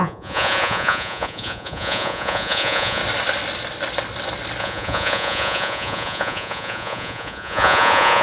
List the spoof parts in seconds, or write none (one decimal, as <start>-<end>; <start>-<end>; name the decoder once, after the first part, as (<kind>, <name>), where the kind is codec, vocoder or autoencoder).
0.0-3.0 (vocoder, Vocos); 4.6-8.2